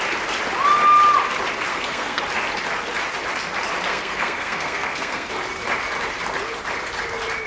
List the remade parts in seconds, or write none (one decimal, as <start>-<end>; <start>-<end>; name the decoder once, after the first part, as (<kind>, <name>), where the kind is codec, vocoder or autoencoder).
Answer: 1.7-2.2 (codec, SNAC); 3.9-5.3